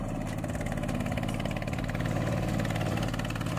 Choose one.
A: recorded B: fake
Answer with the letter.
A